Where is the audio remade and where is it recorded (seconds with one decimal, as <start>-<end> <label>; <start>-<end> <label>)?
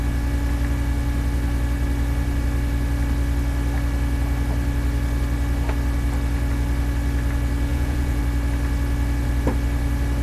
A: 0.0-7.7 recorded; 7.7-8.2 remade; 8.2-10.2 recorded